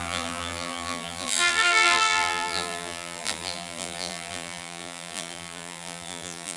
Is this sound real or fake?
fake